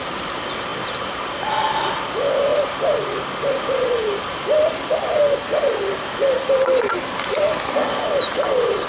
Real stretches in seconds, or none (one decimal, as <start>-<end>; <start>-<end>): 0.0-8.9